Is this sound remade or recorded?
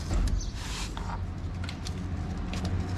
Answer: recorded